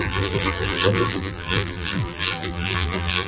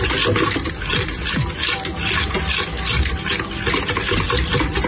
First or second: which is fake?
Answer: first